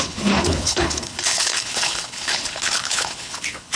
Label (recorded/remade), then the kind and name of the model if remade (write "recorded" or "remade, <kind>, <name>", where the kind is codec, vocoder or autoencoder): remade, codec, HILCodec